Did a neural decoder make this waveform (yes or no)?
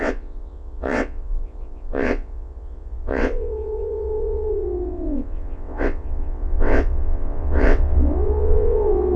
yes